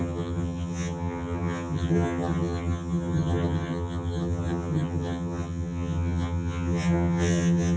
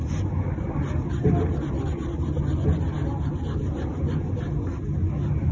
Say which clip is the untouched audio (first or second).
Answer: second